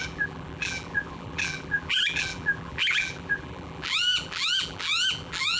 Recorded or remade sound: remade